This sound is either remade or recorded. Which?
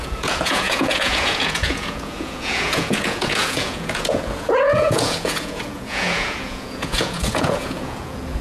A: remade